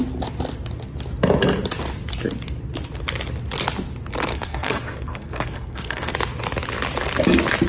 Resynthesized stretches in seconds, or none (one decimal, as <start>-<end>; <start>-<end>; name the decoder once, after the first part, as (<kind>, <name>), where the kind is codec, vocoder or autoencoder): 4.3-6.1 (codec, SNAC)

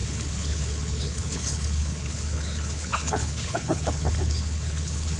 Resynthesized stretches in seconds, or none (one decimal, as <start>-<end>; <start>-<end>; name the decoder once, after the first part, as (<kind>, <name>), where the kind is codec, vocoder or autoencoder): 0.0-5.2 (codec, HILCodec)

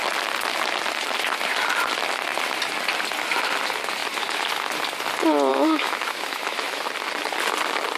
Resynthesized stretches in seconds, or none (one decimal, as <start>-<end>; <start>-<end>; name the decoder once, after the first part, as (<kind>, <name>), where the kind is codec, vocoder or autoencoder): 5.5-6.8 (autoencoder, DAC-VAE)

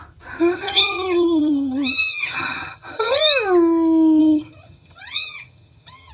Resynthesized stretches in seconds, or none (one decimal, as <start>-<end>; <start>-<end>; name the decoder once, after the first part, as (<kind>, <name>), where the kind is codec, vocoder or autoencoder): 0.4-3.2 (vocoder, HiFi-GAN); 4.2-6.1

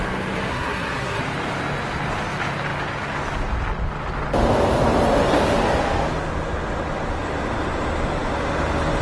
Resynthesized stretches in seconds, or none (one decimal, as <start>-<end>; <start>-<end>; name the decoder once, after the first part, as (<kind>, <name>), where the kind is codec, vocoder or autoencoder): 0.5-1.2 (codec, SNAC)